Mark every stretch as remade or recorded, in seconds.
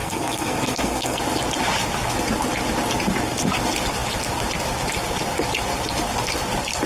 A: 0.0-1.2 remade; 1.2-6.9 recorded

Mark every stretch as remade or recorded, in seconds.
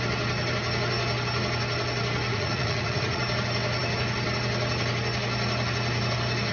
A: 0.0-2.3 recorded; 2.3-3.2 remade; 3.2-6.5 recorded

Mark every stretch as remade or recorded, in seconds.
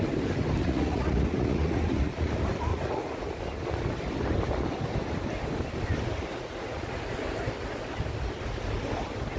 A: 0.0-0.6 recorded; 0.6-2.3 remade; 2.3-2.7 recorded; 2.7-3.3 remade; 3.3-6.3 recorded; 6.3-7.0 remade; 7.0-9.4 recorded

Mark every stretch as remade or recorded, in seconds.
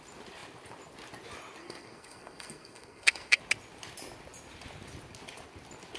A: 0.0-1.6 recorded; 1.6-3.4 remade; 3.4-6.0 recorded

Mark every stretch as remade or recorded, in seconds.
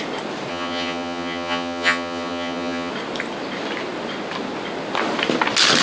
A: 0.0-0.5 recorded; 0.5-2.9 remade; 2.9-5.8 recorded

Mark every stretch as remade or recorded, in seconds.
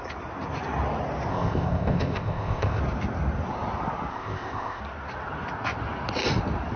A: 0.0-1.3 recorded; 1.3-2.8 remade; 2.8-4.1 recorded; 4.1-4.8 remade; 4.8-6.8 recorded